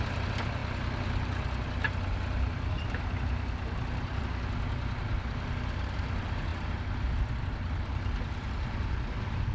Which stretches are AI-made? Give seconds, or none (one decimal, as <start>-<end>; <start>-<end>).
none